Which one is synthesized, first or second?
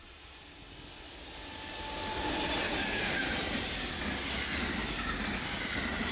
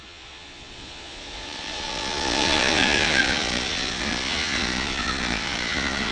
second